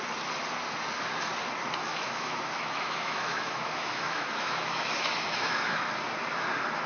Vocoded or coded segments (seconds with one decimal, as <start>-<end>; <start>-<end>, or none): 1.8-5.9